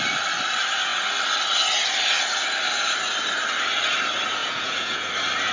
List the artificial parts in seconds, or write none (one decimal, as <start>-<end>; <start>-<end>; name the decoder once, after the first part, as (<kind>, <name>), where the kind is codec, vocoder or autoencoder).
4.4-5.1 (vocoder, Vocos)